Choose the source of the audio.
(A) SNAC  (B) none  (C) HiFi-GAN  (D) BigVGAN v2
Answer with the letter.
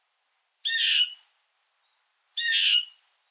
B